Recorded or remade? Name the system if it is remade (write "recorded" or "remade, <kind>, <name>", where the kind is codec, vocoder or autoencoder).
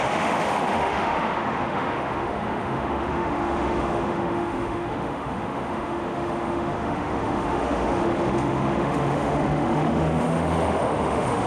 remade, autoencoder, DAC-VAE